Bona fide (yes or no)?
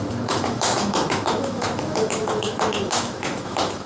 no